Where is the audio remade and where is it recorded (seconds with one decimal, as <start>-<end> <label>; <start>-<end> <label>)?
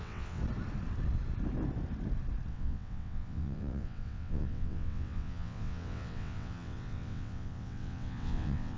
0.0-0.4 remade; 0.4-2.5 recorded; 2.5-8.8 remade